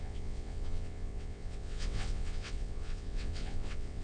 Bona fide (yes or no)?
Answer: no